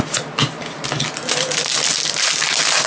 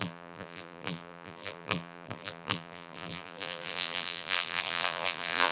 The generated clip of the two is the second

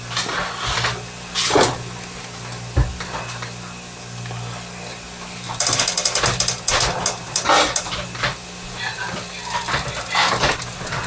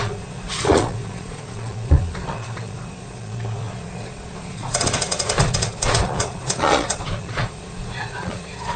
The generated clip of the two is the second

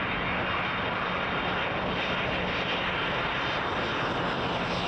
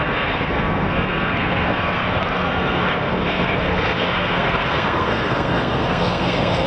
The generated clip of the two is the second